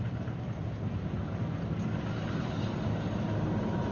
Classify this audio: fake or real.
real